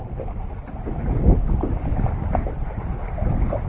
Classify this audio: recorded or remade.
recorded